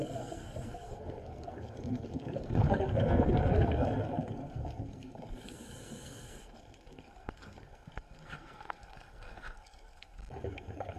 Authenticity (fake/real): fake